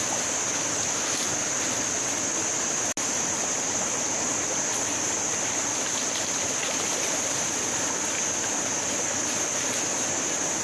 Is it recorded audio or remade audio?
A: recorded